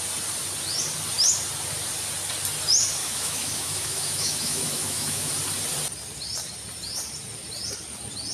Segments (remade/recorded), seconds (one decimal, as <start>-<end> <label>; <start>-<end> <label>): 0.0-3.0 recorded; 3.0-5.3 remade; 5.3-8.3 recorded